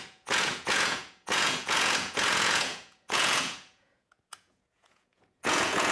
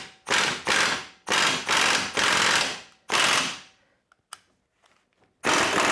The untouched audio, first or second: second